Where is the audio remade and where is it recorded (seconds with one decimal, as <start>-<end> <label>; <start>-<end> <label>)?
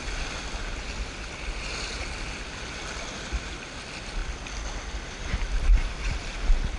0.0-1.9 recorded; 1.9-2.5 remade; 2.5-6.8 recorded